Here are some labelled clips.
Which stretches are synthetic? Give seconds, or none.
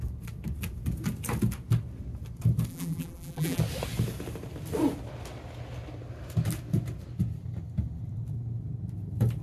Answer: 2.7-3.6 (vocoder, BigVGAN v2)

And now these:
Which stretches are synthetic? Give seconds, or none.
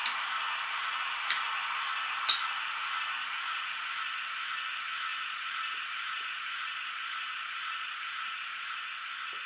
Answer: 3.2-3.9 (vocoder, Vocos); 5.1-8.8